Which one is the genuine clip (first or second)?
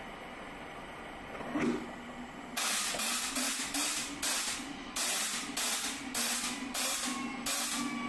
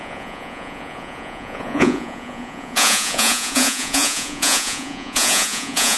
first